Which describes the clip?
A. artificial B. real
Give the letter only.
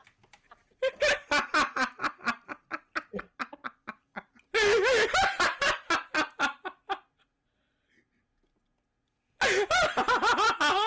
B